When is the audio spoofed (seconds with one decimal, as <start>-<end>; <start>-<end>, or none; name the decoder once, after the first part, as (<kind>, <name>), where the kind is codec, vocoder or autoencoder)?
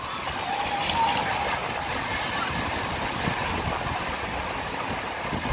none